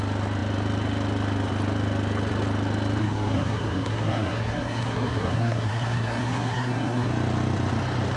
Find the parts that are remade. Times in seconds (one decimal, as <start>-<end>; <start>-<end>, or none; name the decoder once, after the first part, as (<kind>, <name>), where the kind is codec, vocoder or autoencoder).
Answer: 3.0-7.1 (codec, SNAC)